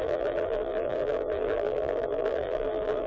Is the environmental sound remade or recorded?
remade